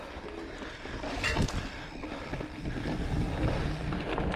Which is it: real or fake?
real